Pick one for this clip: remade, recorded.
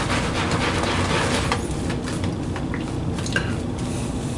recorded